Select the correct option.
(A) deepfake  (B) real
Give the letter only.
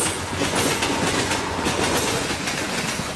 A